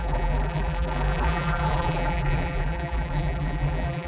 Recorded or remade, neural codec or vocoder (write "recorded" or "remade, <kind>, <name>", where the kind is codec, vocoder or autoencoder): remade, vocoder, BigVGAN v2